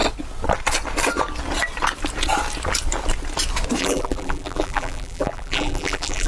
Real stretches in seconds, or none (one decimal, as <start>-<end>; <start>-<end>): 0.0-3.8